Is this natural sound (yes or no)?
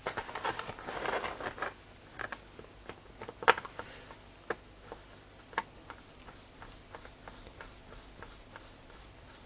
yes